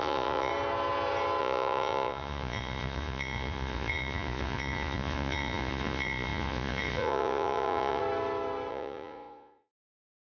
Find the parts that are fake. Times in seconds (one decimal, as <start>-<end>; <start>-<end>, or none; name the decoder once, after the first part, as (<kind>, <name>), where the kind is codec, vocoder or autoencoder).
0.0-0.5 (vocoder, Vocos); 1.4-8.0; 8.7-10.3